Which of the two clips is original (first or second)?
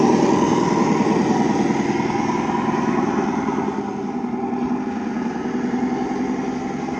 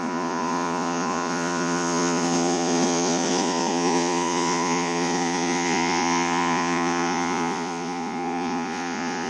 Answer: first